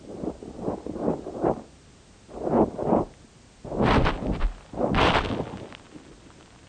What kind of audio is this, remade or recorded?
recorded